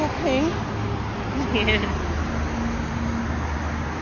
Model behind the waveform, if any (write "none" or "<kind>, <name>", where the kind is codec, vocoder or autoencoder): none